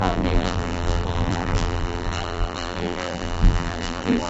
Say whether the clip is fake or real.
fake